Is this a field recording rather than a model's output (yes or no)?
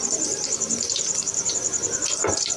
no